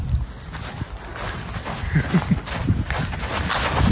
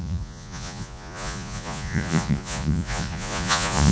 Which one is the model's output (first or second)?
second